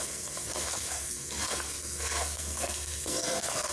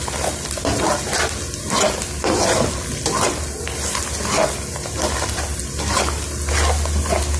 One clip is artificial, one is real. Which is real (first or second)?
second